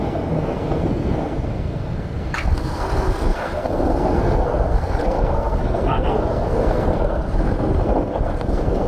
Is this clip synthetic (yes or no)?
yes